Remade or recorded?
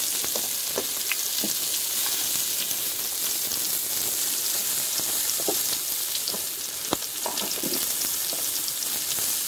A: recorded